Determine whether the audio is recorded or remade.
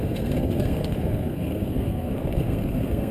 remade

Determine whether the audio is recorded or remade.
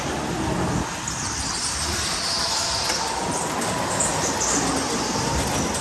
recorded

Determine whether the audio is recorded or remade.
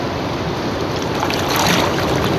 recorded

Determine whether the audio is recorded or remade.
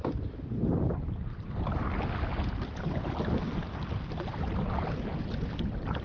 recorded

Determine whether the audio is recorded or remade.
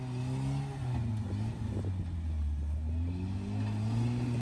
recorded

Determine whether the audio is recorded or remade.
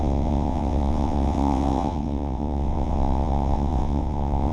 remade